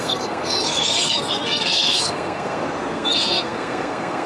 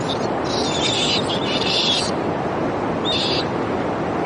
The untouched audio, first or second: second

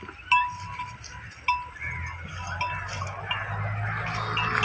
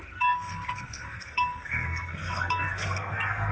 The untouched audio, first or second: first